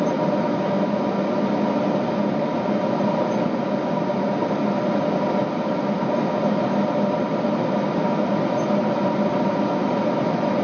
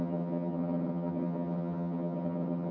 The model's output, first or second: second